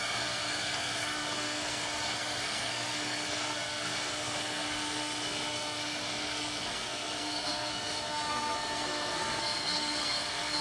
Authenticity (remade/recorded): remade